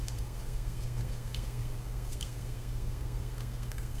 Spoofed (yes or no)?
yes